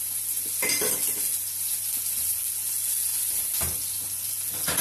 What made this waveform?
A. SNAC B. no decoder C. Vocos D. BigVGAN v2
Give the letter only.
B